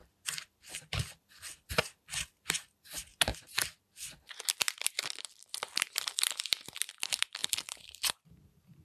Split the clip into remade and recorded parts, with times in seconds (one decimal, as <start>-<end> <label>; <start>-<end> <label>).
0.0-0.9 recorded; 0.9-3.1 remade; 3.1-3.8 recorded; 3.8-8.8 remade